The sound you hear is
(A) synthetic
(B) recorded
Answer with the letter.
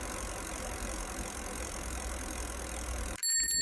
B